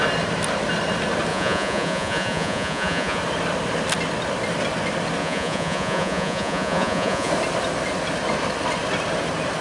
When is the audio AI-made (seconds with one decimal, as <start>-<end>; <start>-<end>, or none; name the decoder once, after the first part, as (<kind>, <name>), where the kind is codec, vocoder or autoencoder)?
1.3-3.2 (vocoder, Vocos); 5.2-7.3